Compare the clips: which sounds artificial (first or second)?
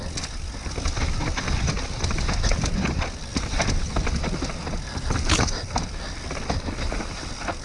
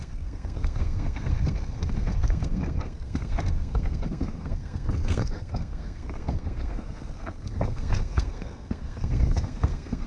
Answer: second